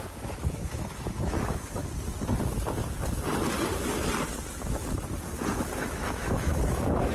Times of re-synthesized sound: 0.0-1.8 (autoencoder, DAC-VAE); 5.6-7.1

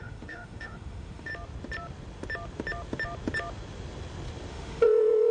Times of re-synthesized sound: 0.0-1.3 (autoencoder, DAC-VAE); 4.5-5.3

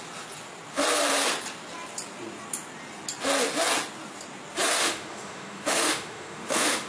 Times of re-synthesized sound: 4.8-6.9 (autoencoder, DAC-VAE)

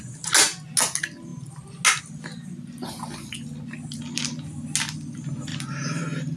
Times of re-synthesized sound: none

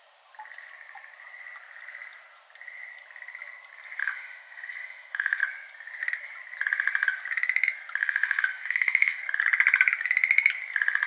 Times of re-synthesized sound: 4.0-5.4 (autoencoder, DAC-VAE); 8.0-9.2